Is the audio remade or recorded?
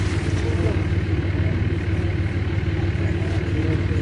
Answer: recorded